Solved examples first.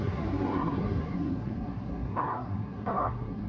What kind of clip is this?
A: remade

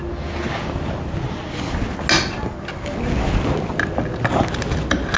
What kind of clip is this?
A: recorded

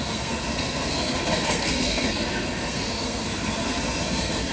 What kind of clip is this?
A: remade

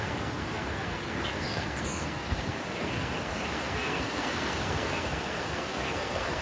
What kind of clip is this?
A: remade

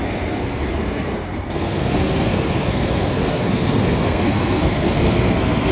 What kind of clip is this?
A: remade